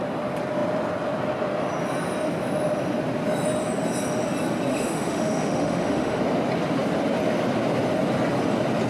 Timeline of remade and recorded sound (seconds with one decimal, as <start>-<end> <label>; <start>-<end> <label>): 0.0-4.7 recorded; 4.7-6.2 remade; 6.2-8.9 recorded